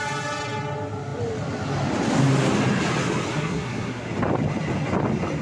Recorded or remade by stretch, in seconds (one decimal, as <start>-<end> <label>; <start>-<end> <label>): 0.0-3.3 recorded; 3.3-4.0 remade; 4.0-5.4 recorded